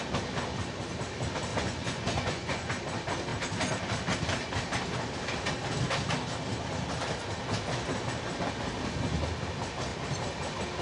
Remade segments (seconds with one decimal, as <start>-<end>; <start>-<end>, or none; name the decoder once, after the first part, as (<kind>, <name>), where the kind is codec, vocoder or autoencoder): 1.5-2.8 (vocoder, Vocos)